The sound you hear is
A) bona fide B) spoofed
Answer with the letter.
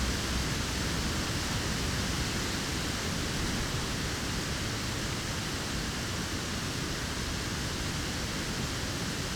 A